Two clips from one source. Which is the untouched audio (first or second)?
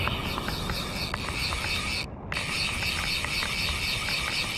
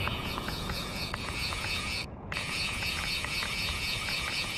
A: first